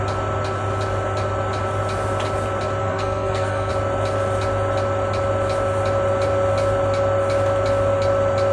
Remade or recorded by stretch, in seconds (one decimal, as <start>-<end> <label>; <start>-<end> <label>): 0.0-2.8 recorded; 2.8-3.7 remade; 3.7-8.5 recorded